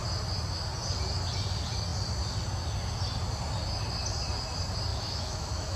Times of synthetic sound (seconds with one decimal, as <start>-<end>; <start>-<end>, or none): 4.9-5.8